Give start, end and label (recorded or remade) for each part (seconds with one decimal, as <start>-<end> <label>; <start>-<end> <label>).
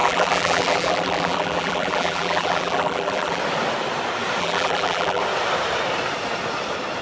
0.0-3.4 remade; 3.4-4.4 recorded; 4.4-5.2 remade; 5.2-7.0 recorded